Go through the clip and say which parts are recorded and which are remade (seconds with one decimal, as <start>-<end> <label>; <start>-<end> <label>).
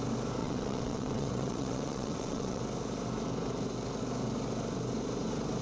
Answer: 0.0-0.4 recorded; 0.4-2.6 remade; 2.6-5.6 recorded